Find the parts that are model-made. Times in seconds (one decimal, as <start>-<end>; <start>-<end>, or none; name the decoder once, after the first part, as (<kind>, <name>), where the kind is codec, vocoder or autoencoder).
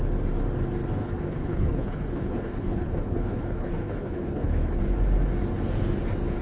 1.0-4.8 (codec, HILCodec)